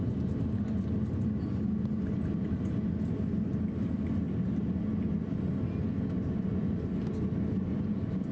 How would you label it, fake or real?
real